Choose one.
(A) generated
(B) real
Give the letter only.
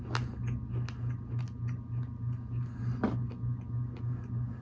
B